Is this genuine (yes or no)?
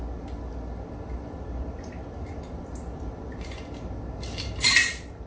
yes